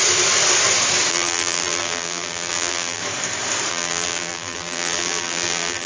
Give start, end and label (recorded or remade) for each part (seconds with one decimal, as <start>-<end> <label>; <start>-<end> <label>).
0.0-1.1 recorded; 1.1-3.0 remade; 3.0-3.7 recorded; 3.7-5.9 remade